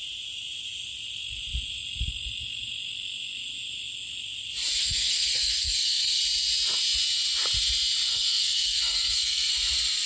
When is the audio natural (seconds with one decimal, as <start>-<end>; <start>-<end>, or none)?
0.0-4.8; 6.2-8.1; 9.5-10.1